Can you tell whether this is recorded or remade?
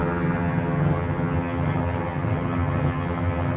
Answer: remade